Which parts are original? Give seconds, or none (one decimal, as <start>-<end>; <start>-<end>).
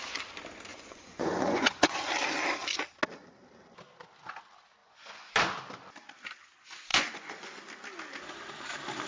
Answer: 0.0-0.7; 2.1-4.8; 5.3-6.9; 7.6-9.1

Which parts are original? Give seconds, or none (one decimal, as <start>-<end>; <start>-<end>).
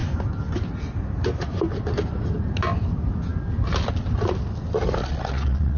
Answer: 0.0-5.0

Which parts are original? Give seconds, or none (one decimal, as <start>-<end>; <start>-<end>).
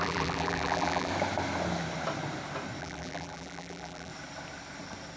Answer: 1.1-2.8; 4.1-5.2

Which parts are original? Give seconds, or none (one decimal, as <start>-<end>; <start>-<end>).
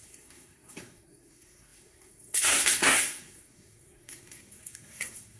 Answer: none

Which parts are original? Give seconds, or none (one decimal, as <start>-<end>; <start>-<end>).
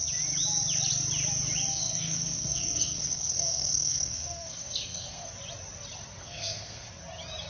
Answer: 0.0-1.7; 5.3-6.2; 6.9-7.5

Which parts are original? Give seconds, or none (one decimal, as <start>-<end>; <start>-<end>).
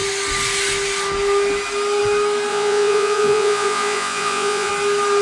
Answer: 0.0-2.5; 4.7-5.2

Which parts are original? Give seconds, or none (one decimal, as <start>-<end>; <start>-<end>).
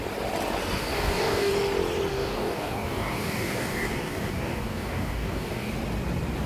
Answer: 0.0-0.8; 1.5-2.1; 5.7-6.5